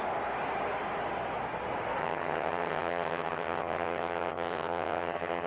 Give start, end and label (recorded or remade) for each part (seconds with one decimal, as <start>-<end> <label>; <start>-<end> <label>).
0.0-2.0 recorded; 2.0-5.5 remade